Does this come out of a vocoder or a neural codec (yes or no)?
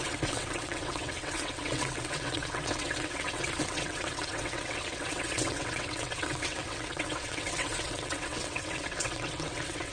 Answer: yes